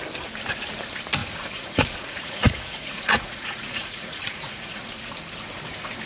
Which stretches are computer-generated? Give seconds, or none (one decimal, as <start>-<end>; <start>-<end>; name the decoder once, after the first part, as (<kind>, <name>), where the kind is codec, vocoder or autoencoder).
1.2-4.9 (vocoder, Vocos)

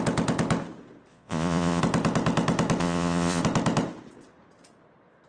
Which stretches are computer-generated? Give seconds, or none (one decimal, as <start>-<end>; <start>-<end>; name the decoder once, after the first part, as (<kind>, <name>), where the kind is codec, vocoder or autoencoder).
1.1-1.8 (vocoder, Vocos); 2.8-3.4

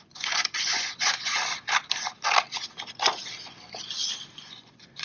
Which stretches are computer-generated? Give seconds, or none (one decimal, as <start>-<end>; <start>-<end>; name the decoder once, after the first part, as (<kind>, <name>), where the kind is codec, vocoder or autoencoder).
0.0-1.4 (vocoder, Vocos); 4.3-5.0